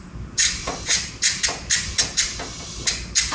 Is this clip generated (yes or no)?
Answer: no